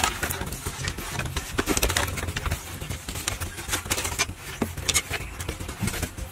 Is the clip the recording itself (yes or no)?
yes